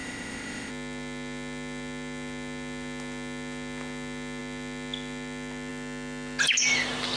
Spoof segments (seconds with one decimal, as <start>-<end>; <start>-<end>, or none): 0.0-0.7